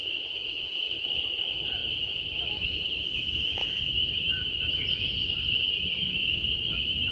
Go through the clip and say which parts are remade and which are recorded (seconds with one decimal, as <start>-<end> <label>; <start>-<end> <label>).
0.0-3.6 remade; 3.6-4.3 recorded; 4.3-4.8 remade; 4.8-6.0 recorded; 6.0-7.1 remade

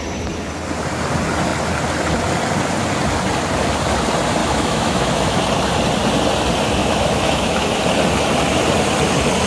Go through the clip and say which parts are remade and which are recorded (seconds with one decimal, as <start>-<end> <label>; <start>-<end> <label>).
0.0-4.4 recorded; 4.4-5.4 remade; 5.4-6.8 recorded; 6.8-7.8 remade; 7.8-9.5 recorded

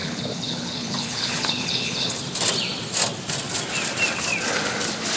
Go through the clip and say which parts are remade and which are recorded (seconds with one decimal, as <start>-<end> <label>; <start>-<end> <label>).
0.0-2.2 remade; 2.2-5.2 recorded

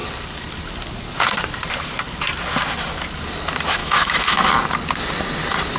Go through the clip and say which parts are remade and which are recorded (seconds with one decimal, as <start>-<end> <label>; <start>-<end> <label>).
0.0-3.8 recorded; 3.8-4.5 remade; 4.5-5.8 recorded

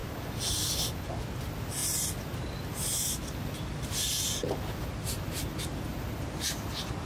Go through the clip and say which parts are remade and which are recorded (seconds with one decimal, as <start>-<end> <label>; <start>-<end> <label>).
0.0-7.1 recorded

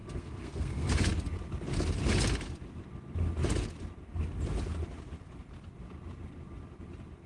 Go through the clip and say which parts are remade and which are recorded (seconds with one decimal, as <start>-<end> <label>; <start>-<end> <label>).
0.0-1.1 remade; 1.1-7.3 recorded